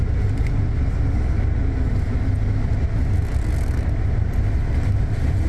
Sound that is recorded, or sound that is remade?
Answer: recorded